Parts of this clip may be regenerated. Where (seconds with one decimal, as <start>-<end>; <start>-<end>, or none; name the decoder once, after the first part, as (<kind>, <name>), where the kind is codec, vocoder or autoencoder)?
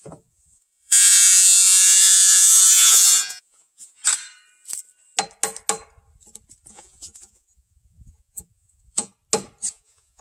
0.0-4.0 (vocoder, Vocos); 6.7-9.1; 9.7-10.2